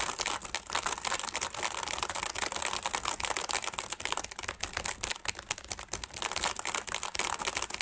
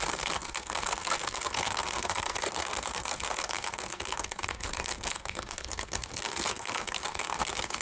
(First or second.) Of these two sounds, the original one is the first